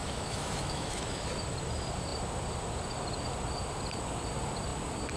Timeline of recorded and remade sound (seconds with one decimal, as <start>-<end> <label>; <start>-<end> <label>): 0.0-1.3 remade; 1.3-5.2 recorded